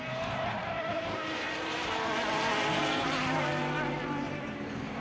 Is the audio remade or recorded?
remade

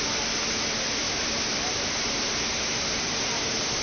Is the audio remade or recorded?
recorded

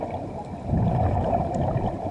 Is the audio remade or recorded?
remade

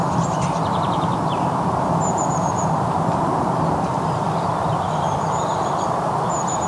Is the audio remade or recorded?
remade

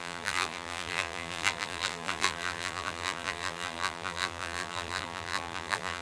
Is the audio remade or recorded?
remade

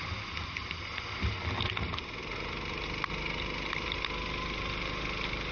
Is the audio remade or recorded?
recorded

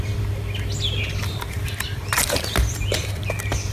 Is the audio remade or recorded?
recorded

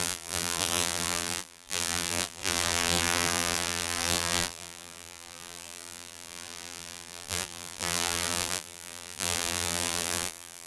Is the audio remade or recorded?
remade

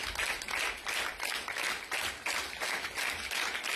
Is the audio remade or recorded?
recorded